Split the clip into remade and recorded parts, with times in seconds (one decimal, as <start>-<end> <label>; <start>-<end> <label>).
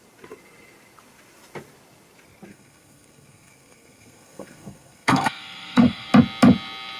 0.0-2.5 recorded; 2.5-6.1 remade; 6.1-7.0 recorded